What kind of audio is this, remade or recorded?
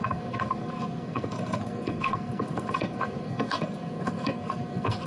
remade